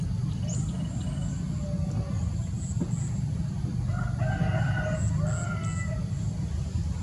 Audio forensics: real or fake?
real